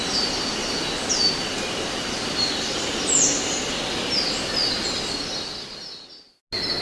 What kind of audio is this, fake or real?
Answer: real